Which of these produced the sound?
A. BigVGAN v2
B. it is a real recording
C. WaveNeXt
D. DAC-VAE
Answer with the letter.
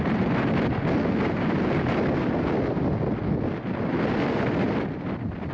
B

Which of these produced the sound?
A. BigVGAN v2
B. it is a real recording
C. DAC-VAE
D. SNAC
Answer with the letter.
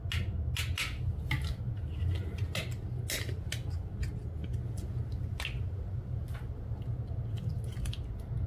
B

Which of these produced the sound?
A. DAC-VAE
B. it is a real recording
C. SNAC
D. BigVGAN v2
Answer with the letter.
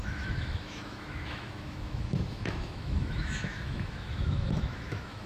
A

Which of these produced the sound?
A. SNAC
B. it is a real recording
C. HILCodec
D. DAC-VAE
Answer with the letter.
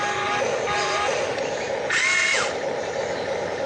B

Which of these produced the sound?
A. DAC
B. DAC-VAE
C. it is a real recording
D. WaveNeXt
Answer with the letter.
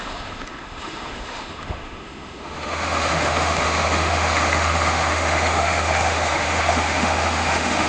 B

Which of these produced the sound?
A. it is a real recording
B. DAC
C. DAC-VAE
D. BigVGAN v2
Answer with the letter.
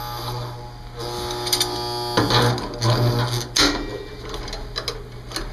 A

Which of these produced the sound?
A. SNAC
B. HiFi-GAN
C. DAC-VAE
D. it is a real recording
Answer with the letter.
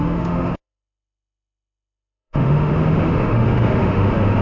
C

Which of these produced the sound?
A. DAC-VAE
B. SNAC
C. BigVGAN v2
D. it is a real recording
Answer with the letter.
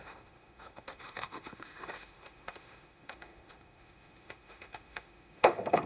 A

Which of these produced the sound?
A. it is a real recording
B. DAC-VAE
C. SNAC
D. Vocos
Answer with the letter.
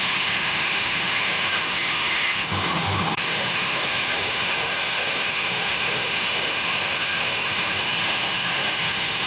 B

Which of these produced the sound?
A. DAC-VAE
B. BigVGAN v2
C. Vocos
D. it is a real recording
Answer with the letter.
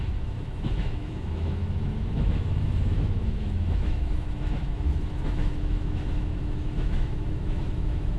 A